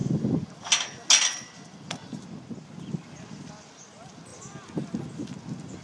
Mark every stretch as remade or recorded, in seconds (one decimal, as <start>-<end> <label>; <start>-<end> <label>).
0.0-5.8 recorded